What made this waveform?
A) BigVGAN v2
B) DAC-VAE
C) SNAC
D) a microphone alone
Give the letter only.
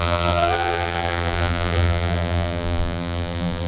A